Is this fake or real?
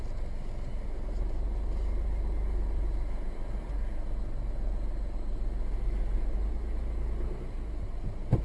real